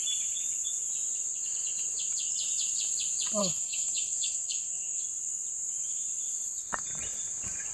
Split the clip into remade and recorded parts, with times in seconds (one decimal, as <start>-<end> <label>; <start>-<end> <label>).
0.0-3.4 recorded; 3.4-5.0 remade; 5.0-7.7 recorded